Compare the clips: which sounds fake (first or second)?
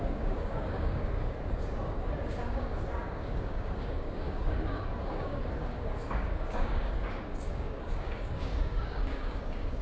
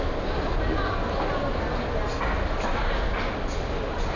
first